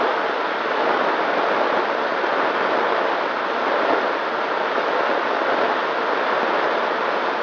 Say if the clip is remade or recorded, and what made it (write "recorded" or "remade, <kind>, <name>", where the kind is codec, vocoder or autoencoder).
recorded